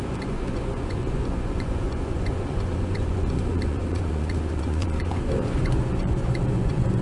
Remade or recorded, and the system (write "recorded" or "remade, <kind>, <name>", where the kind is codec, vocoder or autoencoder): remade, vocoder, Vocos